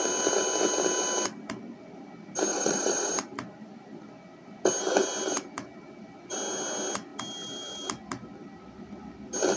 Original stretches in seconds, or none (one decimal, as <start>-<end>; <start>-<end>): 0.0-2.5; 3.1-9.6